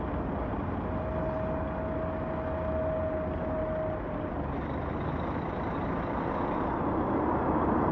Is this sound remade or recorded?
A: recorded